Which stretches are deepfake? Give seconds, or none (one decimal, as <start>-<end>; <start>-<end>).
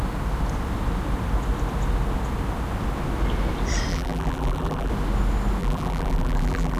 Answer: 3.9-4.9; 5.6-6.8